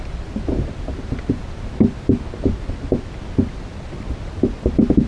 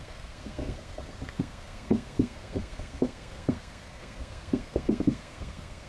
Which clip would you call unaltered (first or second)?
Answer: first